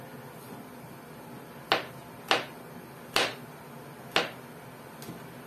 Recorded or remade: recorded